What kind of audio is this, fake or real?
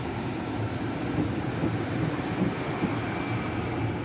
real